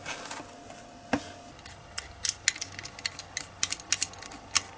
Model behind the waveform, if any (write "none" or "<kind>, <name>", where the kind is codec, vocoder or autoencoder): none